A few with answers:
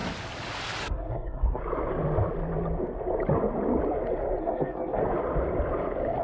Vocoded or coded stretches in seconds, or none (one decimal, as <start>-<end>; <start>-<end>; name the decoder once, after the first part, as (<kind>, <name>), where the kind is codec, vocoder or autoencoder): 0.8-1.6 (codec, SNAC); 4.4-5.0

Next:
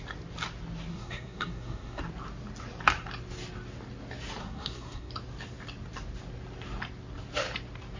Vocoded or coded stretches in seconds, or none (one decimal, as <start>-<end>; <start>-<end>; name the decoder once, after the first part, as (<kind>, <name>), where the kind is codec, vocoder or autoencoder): 0.9-2.0 (codec, SNAC); 4.4-5.1

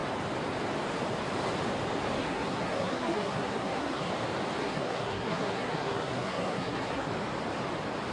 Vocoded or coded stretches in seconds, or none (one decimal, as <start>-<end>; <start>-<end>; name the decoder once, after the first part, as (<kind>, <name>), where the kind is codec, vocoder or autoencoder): 2.2-4.1 (codec, SNAC); 4.6-7.1

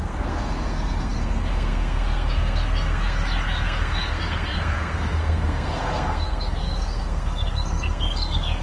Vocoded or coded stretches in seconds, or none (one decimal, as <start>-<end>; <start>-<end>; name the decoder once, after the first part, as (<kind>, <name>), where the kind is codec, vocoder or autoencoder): 0.0-8.6 (codec, SNAC)